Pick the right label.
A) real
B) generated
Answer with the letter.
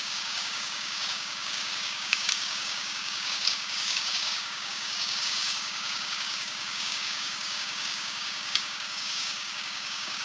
B